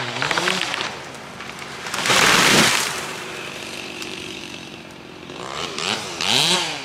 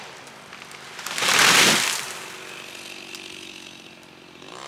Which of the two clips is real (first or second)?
second